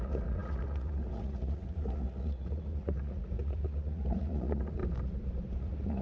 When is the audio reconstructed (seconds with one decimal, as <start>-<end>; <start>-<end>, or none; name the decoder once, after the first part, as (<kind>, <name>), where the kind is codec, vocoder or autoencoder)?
0.0-4.8 (vocoder, Vocos); 5.6-6.0